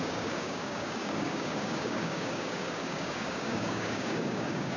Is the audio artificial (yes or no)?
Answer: yes